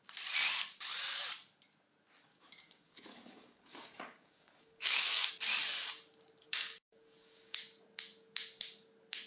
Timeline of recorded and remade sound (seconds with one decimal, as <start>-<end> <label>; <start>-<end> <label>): 0.0-2.3 recorded; 2.3-5.3 remade; 5.3-6.4 recorded; 6.4-7.6 remade; 7.6-9.3 recorded